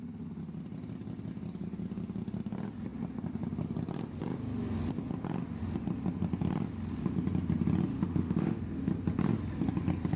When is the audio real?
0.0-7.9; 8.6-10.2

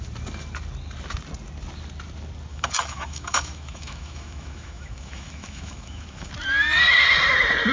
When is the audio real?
0.0-2.5; 6.3-7.7

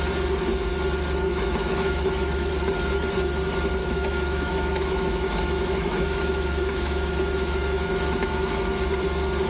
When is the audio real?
0.0-1.3; 2.5-3.8; 8.6-9.5

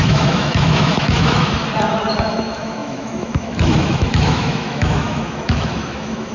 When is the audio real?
1.6-2.2